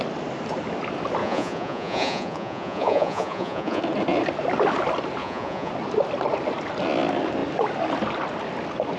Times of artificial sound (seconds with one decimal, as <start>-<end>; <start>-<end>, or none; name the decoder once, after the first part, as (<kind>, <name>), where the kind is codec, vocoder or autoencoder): 1.2-3.8 (vocoder, Vocos); 5.2-5.7

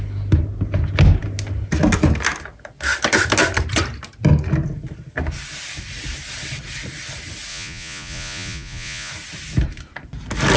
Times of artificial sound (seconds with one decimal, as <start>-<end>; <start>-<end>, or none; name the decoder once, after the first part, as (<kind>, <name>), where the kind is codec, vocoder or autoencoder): 7.5-9.1 (vocoder, Vocos)

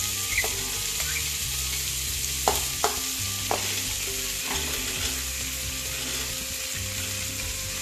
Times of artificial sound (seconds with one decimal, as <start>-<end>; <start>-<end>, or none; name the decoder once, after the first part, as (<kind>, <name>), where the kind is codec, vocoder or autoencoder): none

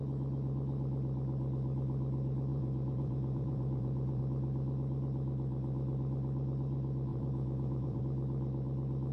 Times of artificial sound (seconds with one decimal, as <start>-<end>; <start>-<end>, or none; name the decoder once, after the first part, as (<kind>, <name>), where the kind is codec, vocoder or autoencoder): 2.5-4.2 (vocoder, Vocos); 7.1-8.0

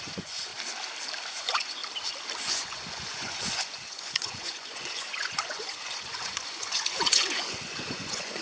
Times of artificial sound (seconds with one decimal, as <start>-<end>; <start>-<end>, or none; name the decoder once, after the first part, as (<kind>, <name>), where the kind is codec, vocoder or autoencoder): 0.0-0.5 (vocoder, Vocos); 1.3-1.8; 2.4-8.4